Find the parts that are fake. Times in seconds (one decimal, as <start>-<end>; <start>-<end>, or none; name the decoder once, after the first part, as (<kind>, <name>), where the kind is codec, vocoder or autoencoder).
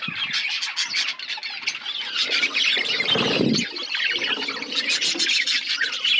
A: none